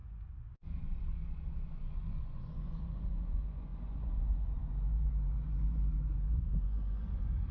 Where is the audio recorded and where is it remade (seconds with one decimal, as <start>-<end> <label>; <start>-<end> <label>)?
0.0-7.5 remade